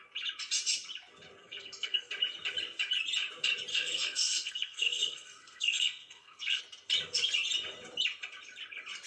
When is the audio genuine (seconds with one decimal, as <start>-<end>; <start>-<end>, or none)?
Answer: 0.0-1.4; 2.1-3.7; 6.6-9.1